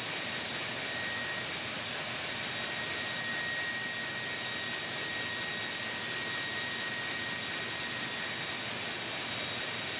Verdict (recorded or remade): recorded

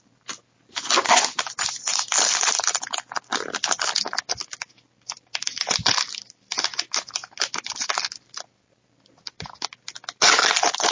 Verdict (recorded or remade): recorded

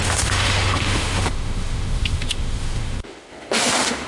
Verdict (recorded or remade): remade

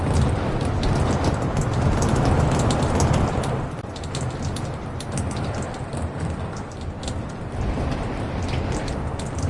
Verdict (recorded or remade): recorded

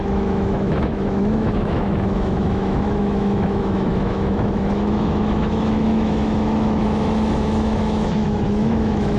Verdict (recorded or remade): remade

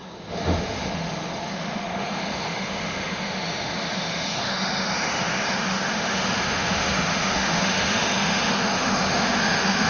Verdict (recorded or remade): remade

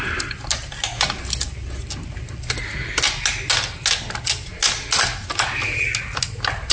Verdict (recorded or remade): recorded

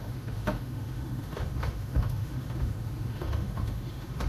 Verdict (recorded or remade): remade